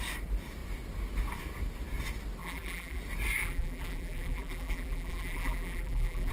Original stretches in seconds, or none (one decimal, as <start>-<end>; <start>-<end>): 0.0-2.4; 3.0-3.4